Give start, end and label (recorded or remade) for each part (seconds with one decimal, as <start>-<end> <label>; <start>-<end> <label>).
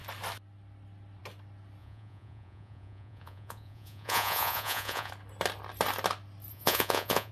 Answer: 0.0-1.8 recorded; 1.8-5.1 remade; 5.1-6.5 recorded; 6.5-7.3 remade